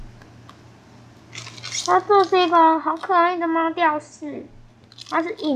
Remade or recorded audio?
recorded